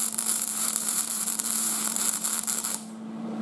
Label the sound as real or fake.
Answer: fake